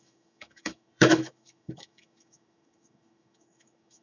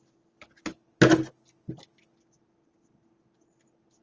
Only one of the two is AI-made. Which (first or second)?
first